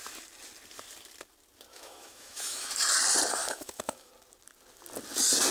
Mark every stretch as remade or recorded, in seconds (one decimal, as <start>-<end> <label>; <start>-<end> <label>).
0.0-1.7 recorded; 1.7-2.7 remade; 2.7-3.4 recorded; 3.4-4.1 remade; 4.1-5.5 recorded